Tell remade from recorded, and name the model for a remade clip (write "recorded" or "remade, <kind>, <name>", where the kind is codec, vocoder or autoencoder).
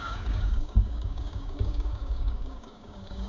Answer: remade, codec, DAC